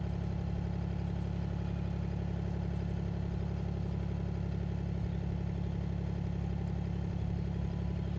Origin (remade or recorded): recorded